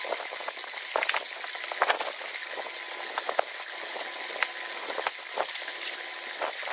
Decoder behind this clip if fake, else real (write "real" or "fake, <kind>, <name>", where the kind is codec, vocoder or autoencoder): real